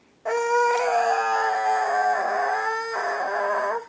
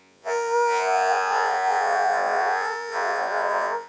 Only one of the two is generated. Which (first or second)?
second